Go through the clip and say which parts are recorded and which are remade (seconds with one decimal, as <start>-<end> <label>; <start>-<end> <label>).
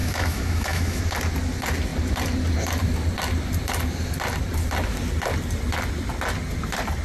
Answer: 0.0-1.0 remade; 1.0-7.0 recorded